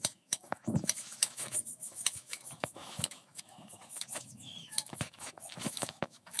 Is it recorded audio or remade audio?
remade